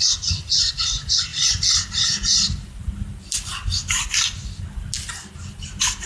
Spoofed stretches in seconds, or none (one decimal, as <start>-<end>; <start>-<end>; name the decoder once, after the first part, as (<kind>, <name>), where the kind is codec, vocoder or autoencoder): none